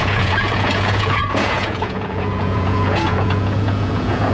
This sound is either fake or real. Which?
fake